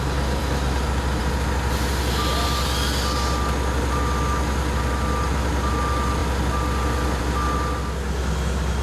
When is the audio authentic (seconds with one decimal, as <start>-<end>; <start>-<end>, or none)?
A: 0.0-8.8